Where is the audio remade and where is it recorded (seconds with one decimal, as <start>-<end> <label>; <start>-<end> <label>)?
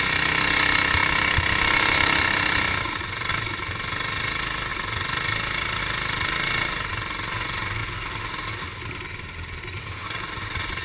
0.0-1.0 recorded; 1.0-3.3 remade; 3.3-7.8 recorded; 7.8-8.5 remade; 8.5-10.8 recorded